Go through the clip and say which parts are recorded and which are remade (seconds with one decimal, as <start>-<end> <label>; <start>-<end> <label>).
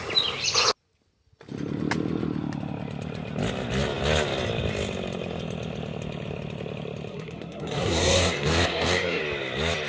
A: 0.0-7.1 recorded; 7.1-9.2 remade; 9.2-9.9 recorded